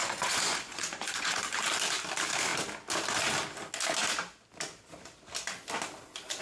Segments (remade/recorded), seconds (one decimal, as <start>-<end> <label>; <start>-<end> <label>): 0.0-1.4 remade; 1.4-6.4 recorded